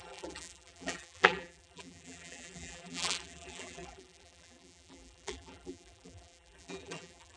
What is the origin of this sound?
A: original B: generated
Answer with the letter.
B